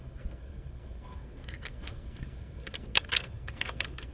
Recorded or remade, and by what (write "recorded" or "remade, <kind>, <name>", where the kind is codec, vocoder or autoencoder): remade, codec, SNAC